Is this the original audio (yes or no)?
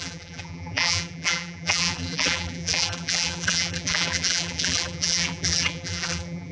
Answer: no